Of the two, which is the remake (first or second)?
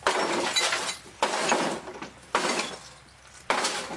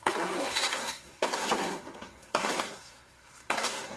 second